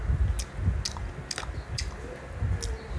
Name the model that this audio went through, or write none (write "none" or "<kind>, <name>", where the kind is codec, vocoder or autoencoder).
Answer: none